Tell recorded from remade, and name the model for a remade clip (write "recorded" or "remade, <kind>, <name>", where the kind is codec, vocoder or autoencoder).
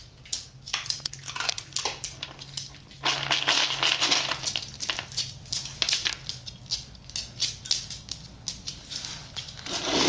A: recorded